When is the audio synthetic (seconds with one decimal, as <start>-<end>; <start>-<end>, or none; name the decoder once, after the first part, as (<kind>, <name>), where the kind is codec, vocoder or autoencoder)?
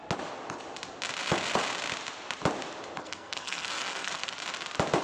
3.0-4.3 (codec, SNAC)